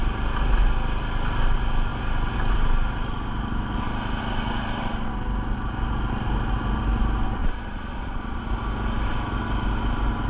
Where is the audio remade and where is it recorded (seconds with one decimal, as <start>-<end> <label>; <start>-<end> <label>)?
0.0-7.4 recorded; 7.4-8.5 remade; 8.5-10.3 recorded